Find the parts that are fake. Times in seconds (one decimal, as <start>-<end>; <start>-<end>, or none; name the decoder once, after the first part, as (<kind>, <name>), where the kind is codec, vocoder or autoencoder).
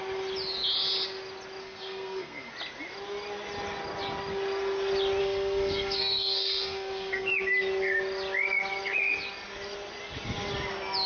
1.6-2.5 (codec, SNAC); 5.2-7.3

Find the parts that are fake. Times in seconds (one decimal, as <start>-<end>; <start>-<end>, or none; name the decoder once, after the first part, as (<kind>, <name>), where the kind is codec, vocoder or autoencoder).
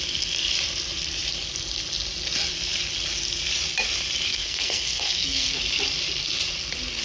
4.3-5.6 (codec, SNAC)